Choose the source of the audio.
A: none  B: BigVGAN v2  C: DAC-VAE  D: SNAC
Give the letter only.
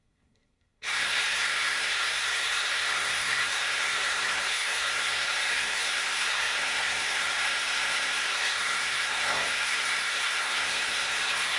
D